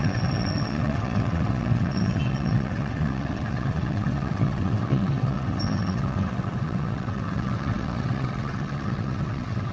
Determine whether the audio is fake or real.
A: fake